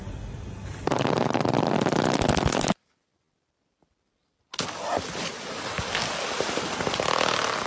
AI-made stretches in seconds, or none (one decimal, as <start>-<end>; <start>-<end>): none